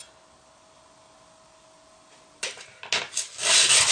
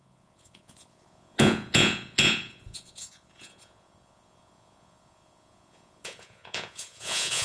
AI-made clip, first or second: second